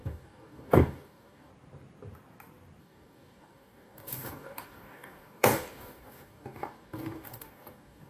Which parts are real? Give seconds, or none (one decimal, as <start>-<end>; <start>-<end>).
1.5-2.8